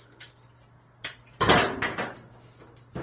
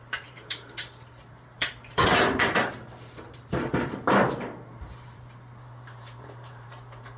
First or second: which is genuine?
first